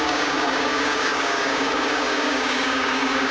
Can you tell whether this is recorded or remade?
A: remade